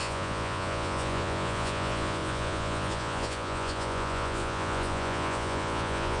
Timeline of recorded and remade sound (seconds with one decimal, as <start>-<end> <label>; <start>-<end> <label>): 0.0-6.2 remade